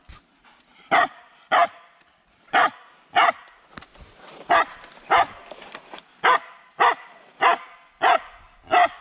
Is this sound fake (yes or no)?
no